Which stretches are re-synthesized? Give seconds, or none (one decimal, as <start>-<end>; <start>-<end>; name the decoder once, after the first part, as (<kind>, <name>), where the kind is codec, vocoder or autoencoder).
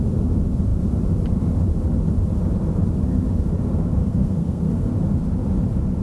4.0-4.9 (codec, SNAC)